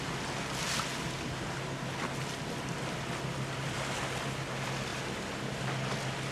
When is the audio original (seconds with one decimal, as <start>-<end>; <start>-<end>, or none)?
0.0-6.3